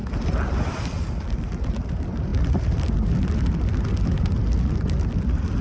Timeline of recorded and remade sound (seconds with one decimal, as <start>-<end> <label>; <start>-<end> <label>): 0.0-5.6 recorded